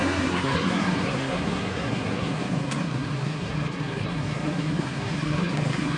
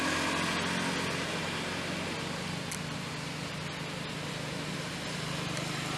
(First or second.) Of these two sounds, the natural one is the second